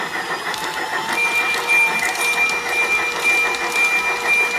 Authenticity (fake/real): real